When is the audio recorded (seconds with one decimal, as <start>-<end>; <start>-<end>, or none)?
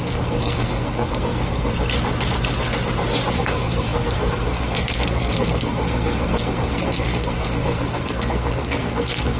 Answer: 1.7-3.3